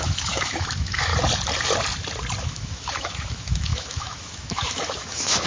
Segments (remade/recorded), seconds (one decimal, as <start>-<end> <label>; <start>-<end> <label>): 0.0-1.1 remade; 1.1-2.4 recorded; 2.4-5.5 remade